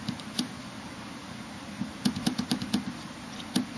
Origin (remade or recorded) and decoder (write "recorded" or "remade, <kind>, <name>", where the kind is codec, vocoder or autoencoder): recorded